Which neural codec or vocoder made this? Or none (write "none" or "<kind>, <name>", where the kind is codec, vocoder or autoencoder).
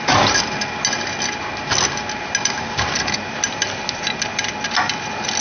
none